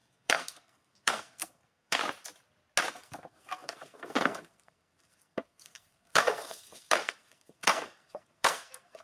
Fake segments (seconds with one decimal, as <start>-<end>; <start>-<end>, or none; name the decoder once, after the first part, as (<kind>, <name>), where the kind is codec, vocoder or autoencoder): 0.0-2.0 (codec, SNAC); 2.9-9.0